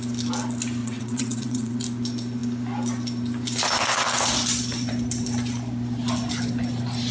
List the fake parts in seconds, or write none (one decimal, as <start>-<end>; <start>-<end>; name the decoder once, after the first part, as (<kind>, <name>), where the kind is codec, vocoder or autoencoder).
0.8-1.8 (vocoder, WaveNeXt)